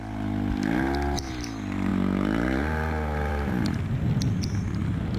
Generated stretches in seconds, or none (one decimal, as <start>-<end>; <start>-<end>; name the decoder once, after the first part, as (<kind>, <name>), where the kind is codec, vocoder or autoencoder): none